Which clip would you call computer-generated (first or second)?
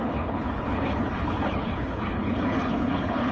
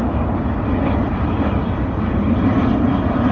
first